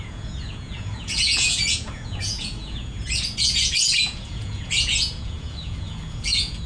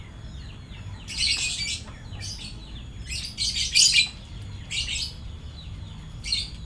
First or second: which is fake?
first